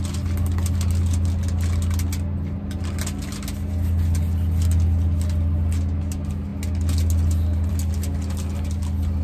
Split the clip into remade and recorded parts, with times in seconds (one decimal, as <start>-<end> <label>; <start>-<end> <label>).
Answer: 0.0-9.2 recorded